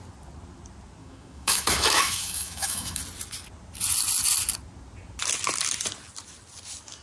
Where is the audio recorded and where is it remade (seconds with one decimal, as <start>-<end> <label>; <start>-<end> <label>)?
0.0-1.0 recorded; 1.0-3.0 remade; 3.0-7.0 recorded